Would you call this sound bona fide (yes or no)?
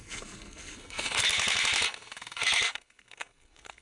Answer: no